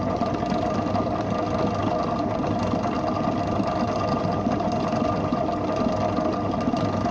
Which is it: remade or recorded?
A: recorded